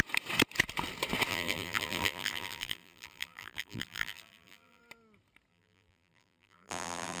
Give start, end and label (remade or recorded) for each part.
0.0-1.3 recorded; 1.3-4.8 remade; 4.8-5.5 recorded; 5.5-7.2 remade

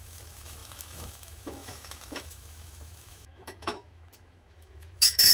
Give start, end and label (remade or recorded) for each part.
0.0-5.3 remade

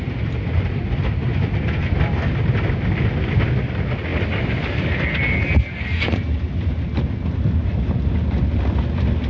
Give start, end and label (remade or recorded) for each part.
0.0-9.3 recorded